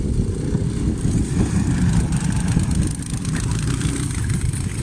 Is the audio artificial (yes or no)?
no